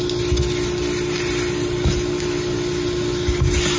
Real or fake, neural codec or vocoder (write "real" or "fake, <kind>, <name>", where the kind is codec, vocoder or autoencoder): real